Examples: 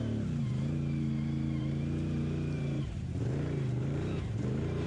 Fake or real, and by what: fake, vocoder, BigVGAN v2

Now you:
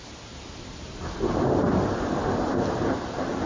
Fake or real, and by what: fake, vocoder, BigVGAN v2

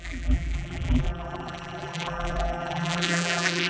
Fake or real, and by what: fake, vocoder, BigVGAN v2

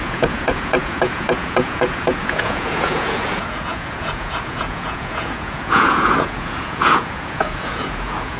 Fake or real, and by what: fake, vocoder, Vocos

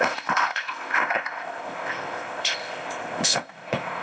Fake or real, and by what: fake, codec, ZipCodec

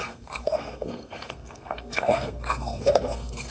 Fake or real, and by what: fake, codec, SNAC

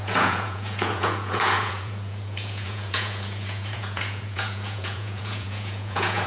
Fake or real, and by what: fake, vocoder, Vocos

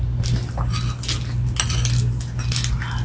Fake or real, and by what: real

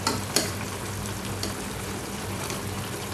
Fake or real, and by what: fake, vocoder, BigVGAN v2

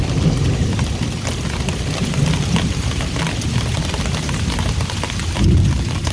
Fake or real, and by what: real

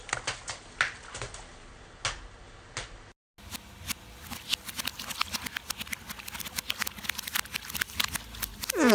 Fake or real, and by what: real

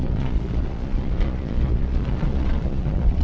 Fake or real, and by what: fake, vocoder, Vocos